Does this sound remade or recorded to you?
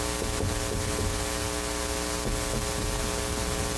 recorded